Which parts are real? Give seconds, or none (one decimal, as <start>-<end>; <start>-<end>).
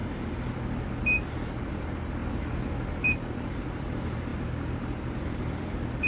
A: 0.0-1.0; 2.2-3.1; 4.3-5.2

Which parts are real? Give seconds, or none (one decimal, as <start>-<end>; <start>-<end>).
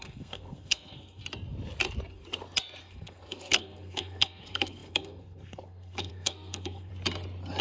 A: 1.2-2.8; 6.9-7.6